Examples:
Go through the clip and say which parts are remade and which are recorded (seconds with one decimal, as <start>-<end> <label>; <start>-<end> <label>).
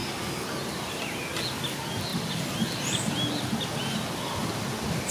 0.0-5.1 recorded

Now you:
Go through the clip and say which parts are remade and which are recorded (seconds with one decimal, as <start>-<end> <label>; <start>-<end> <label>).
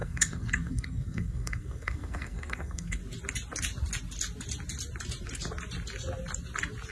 0.0-3.0 remade; 3.0-6.9 recorded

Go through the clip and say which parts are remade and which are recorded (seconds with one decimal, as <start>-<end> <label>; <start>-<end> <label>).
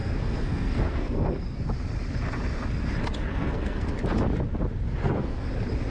0.0-1.6 remade; 1.6-3.3 recorded; 3.3-3.9 remade; 3.9-5.0 recorded; 5.0-5.5 remade; 5.5-5.9 recorded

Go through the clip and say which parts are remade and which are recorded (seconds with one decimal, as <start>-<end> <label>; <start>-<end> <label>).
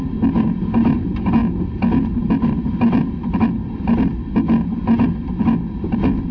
0.0-6.3 recorded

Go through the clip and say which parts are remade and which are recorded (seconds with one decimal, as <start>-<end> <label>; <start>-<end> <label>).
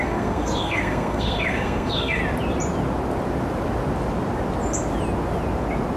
0.0-2.2 remade; 2.2-6.0 recorded